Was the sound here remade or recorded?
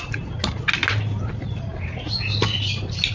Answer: recorded